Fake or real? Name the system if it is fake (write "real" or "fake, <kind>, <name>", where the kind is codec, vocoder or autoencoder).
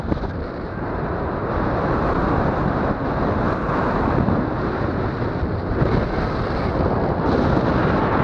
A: real